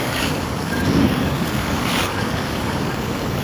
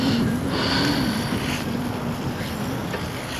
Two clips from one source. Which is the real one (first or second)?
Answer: second